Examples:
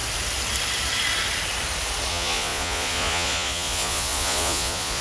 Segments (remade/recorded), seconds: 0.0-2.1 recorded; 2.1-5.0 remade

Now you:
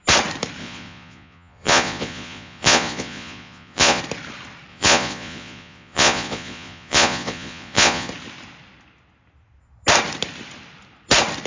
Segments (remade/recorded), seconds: 0.0-0.6 recorded; 0.6-4.0 remade; 4.0-4.7 recorded; 4.7-8.1 remade; 8.1-11.5 recorded

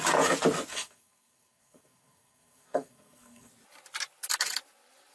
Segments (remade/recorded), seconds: 0.0-0.7 recorded; 0.7-3.5 remade; 3.5-5.1 recorded